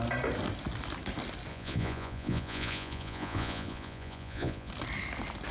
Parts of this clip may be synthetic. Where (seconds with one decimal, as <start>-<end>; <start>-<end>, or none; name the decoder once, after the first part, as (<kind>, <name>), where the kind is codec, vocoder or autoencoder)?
1.5-4.7 (vocoder, Vocos)